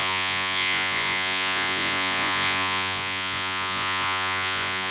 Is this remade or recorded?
remade